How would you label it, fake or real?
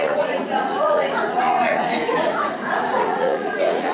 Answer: fake